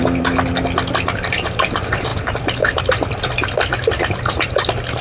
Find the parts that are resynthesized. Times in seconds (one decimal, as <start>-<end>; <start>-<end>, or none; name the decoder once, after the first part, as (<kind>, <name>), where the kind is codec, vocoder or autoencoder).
0.0-5.0 (vocoder, BigVGAN v2)